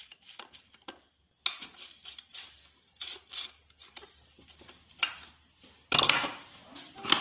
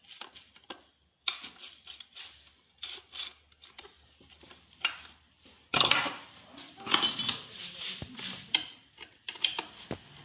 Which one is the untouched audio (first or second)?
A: first